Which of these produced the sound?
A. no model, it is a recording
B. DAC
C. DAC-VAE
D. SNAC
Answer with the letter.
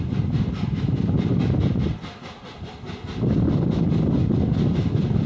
A